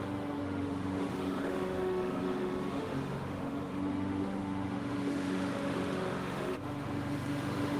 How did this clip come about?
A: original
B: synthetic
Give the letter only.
B